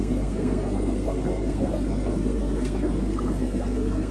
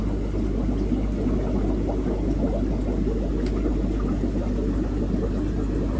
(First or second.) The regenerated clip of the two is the first